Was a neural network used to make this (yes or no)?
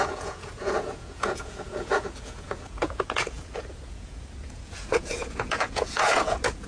yes